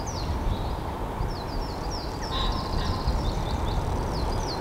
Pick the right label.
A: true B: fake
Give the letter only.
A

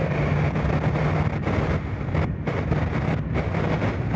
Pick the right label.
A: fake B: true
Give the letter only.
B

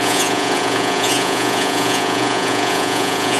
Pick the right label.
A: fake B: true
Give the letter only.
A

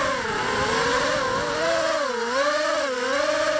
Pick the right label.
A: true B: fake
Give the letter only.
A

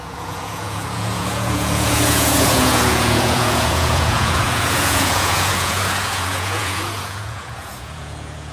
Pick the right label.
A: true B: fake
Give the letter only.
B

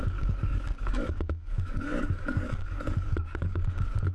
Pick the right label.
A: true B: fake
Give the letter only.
B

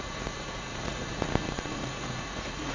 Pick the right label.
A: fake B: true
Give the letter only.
A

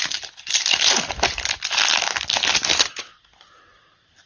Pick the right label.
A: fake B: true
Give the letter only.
B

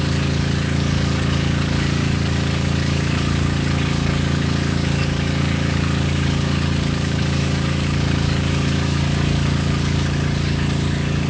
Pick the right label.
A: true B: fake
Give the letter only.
B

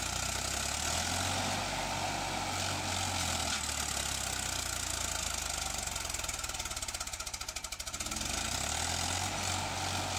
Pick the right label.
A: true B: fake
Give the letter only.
A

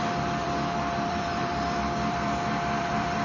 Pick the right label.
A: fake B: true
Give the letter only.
A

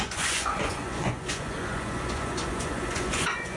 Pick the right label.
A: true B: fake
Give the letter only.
B